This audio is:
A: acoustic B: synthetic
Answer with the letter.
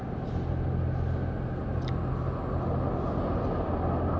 A